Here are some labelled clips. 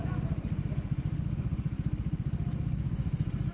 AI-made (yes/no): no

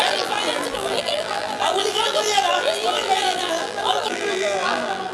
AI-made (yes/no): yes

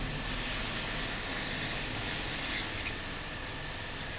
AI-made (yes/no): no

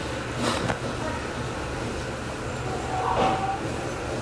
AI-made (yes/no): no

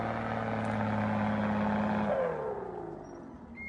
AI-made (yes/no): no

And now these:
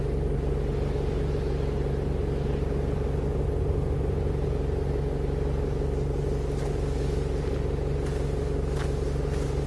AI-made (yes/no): no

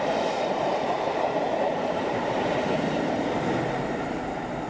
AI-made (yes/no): yes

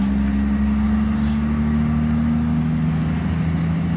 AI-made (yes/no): no